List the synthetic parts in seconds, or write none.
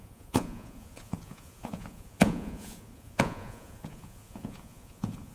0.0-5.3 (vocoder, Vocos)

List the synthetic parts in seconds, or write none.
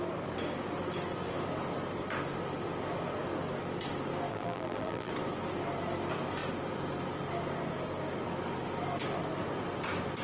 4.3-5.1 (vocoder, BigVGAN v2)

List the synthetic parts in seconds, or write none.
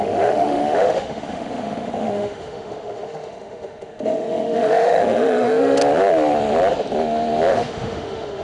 0.0-5.8 (autoencoder, DAC-VAE); 7.5-8.4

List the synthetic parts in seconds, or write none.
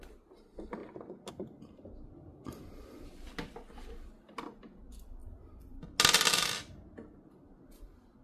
none